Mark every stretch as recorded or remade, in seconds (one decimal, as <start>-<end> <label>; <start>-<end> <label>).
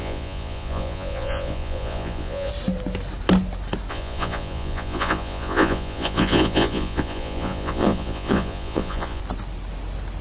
0.0-2.5 remade; 2.5-3.9 recorded; 3.9-9.2 remade; 9.2-10.2 recorded